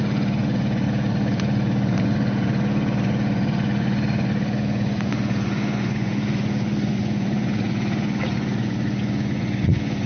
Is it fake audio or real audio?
fake